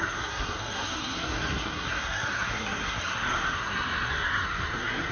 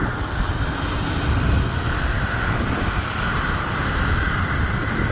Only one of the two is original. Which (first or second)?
second